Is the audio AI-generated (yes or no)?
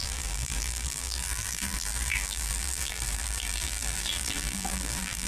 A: yes